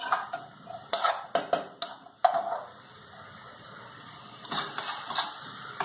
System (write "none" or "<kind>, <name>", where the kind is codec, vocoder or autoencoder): none